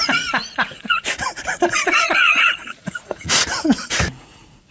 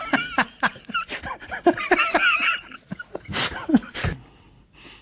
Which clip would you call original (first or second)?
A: second